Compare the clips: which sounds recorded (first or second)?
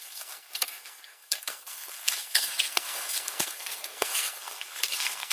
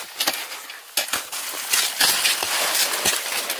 second